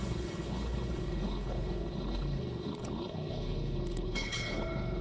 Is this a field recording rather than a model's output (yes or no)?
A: no